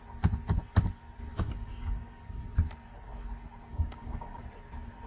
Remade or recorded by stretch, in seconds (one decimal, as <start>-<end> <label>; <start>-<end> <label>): 0.0-1.3 recorded; 1.3-2.4 remade; 2.4-3.7 recorded; 3.7-4.4 remade; 4.4-5.1 recorded